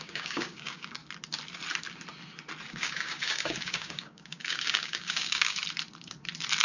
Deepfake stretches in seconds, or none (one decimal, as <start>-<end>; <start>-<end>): 0.0-1.0; 2.7-5.6